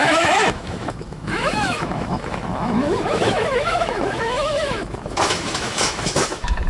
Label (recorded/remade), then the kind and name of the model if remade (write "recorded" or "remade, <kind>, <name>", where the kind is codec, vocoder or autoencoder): remade, autoencoder, DAC-VAE